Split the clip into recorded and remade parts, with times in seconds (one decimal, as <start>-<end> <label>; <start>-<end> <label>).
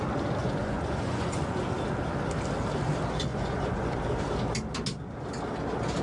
0.0-0.4 recorded; 0.4-1.6 remade; 1.6-3.3 recorded; 3.3-4.0 remade; 4.0-6.0 recorded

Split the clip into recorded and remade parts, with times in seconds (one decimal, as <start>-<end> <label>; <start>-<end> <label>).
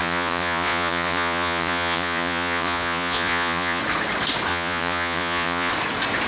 0.0-3.8 remade; 3.8-4.5 recorded; 4.5-5.7 remade; 5.7-6.3 recorded